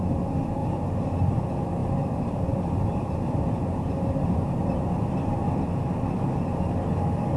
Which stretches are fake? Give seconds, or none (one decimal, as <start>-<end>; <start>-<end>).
1.8-5.4